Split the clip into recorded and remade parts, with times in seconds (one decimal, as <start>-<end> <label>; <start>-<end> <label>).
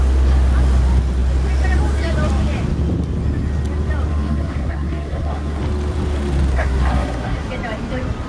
0.0-4.1 recorded; 4.1-5.6 remade; 5.6-6.5 recorded; 6.5-7.5 remade; 7.5-8.3 recorded